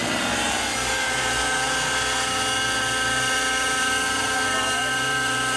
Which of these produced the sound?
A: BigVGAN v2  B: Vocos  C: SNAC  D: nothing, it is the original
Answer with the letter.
D